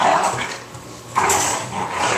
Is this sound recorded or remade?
remade